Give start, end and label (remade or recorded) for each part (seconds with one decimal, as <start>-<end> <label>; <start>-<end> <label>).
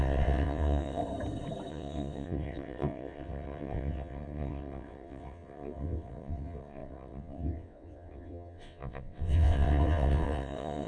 0.0-1.0 remade; 1.0-1.7 recorded; 1.7-10.9 remade